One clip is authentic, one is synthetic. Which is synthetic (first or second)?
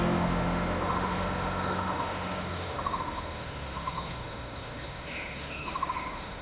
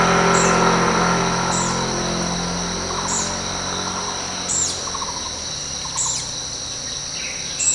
first